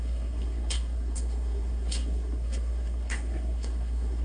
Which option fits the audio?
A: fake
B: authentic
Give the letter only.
A